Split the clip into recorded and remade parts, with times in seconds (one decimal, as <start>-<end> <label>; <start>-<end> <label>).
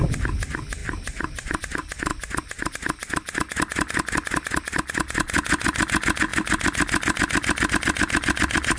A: 0.0-0.8 recorded; 0.8-1.6 remade; 1.6-2.1 recorded; 2.1-2.7 remade; 2.7-8.8 recorded